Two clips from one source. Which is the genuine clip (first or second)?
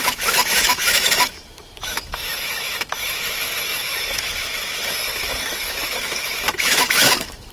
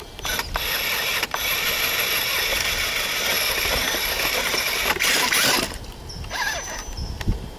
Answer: second